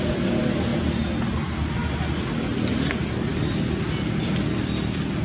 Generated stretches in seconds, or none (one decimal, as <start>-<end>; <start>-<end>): none